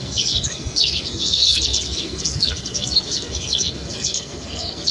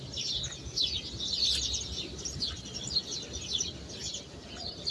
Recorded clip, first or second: second